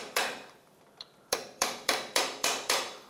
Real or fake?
fake